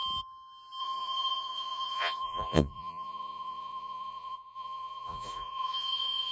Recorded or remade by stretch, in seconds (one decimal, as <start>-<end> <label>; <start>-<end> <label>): 0.0-0.8 recorded; 0.8-6.3 remade